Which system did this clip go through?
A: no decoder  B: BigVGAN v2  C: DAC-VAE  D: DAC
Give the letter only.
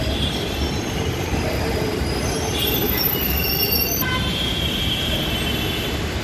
B